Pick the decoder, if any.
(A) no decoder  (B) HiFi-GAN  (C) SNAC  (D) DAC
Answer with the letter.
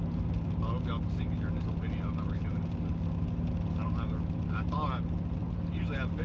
A